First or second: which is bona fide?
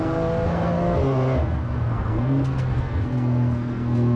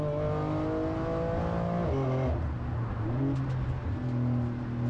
second